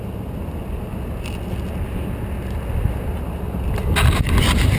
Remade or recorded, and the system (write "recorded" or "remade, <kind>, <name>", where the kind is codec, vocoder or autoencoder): recorded